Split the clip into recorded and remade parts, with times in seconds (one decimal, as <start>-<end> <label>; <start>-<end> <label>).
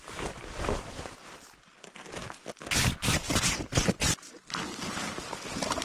0.0-5.8 recorded